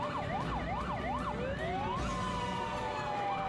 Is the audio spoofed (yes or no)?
no